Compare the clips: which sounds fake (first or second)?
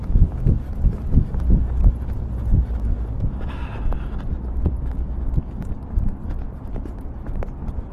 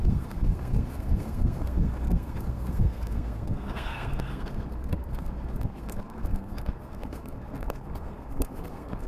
second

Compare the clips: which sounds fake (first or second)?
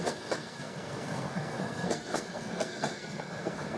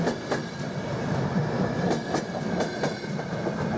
first